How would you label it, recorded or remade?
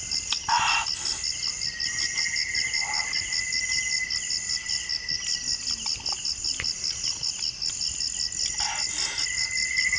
recorded